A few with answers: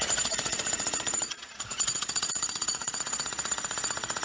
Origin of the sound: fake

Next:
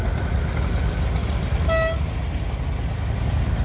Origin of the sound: real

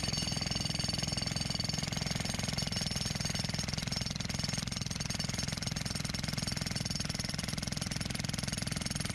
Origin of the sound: real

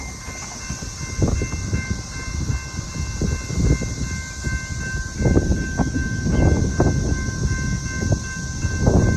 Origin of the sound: real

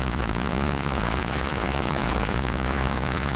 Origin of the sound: fake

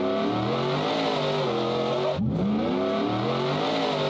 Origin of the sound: real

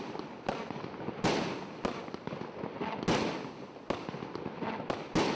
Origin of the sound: real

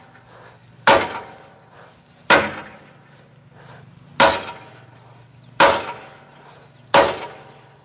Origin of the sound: real